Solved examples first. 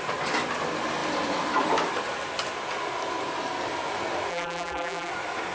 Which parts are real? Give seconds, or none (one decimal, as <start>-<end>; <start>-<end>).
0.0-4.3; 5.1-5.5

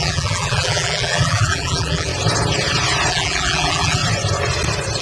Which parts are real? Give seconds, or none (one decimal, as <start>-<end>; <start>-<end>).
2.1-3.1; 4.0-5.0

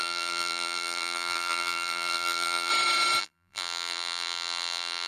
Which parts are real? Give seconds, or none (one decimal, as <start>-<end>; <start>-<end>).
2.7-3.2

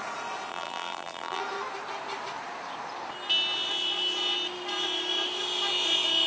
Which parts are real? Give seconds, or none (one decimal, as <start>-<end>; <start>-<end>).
0.0-0.5; 1.4-6.3

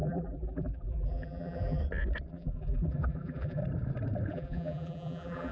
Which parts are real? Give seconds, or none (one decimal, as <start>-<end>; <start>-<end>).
1.8-2.3; 3.6-4.3

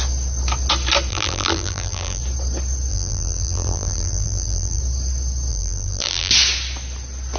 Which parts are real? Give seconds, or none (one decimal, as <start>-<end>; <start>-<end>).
0.0-1.1; 2.2-2.9; 4.8-5.5; 6.3-7.4